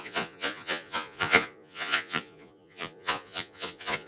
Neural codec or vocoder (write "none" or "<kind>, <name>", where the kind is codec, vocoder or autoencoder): vocoder, Vocos